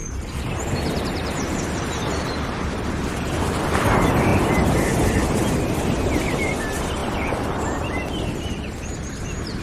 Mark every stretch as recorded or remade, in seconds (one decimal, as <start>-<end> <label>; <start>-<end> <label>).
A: 0.0-2.9 remade; 2.9-9.6 recorded